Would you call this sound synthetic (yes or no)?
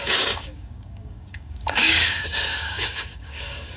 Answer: yes